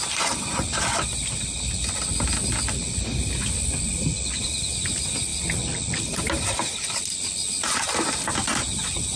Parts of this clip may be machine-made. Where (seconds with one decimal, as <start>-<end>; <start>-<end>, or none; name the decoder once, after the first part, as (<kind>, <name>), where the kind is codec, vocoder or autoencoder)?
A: none